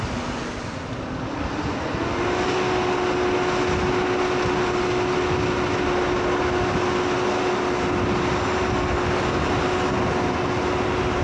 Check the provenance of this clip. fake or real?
real